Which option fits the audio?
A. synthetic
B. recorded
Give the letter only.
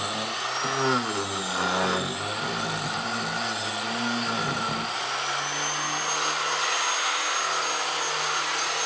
B